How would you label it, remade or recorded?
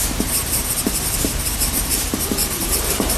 remade